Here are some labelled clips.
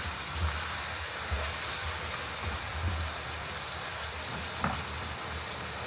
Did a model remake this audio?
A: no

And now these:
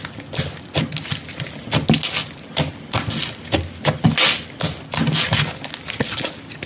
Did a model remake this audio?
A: no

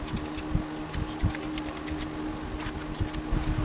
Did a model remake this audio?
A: no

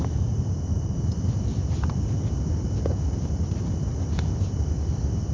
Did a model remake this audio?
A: no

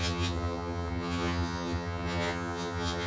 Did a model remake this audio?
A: yes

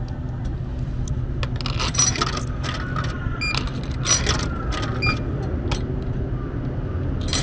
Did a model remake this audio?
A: no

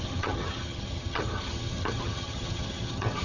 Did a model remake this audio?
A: yes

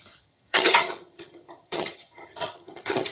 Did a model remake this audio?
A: yes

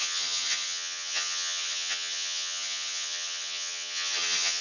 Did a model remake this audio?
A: yes